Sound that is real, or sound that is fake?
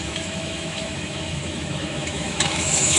fake